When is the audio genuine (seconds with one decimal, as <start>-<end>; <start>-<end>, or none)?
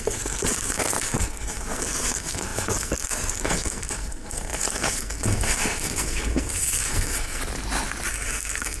7.4-8.1